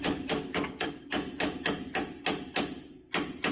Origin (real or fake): real